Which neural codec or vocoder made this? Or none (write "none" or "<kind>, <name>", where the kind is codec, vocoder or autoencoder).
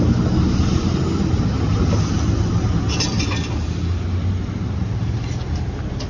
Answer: none